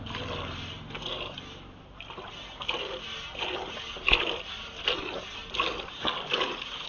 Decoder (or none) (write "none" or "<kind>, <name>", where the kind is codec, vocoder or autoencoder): none